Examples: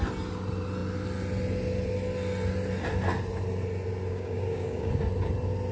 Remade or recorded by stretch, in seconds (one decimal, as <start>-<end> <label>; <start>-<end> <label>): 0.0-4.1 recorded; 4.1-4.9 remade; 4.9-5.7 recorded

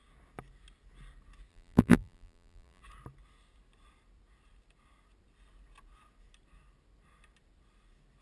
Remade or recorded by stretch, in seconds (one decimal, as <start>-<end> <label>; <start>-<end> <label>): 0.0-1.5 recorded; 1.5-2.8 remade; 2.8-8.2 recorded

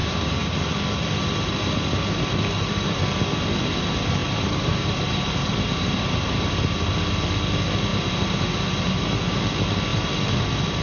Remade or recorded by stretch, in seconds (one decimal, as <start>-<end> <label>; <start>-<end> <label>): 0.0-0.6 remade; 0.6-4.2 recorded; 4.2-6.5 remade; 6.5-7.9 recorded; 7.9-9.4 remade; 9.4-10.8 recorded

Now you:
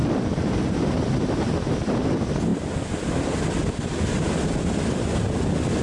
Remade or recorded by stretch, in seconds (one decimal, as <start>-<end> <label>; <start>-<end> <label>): 0.0-0.9 remade; 0.9-5.8 recorded

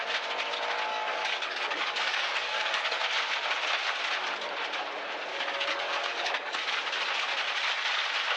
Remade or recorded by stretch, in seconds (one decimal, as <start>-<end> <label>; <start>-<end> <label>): 0.0-0.9 recorded; 0.9-3.0 remade; 3.0-5.3 recorded; 5.3-6.8 remade; 6.8-8.4 recorded